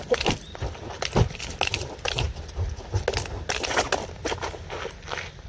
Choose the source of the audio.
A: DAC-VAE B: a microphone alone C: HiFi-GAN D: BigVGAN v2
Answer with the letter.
B